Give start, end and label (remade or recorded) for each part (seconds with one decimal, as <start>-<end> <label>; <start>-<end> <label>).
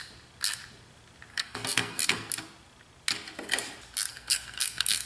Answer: 0.0-1.3 recorded; 1.3-2.3 remade; 2.3-4.1 recorded; 4.1-5.1 remade